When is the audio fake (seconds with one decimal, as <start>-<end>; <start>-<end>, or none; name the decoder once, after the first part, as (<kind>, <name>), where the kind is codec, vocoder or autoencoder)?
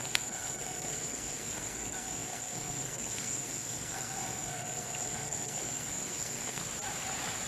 0.0-6.6 (codec, SNAC)